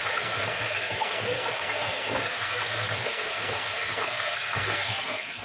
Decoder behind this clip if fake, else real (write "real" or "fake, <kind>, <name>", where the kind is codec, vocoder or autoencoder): fake, codec, SNAC